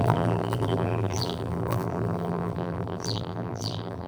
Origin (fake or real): fake